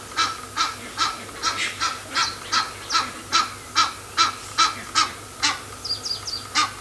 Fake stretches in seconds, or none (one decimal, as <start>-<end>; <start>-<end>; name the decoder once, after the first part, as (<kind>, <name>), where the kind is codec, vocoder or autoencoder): none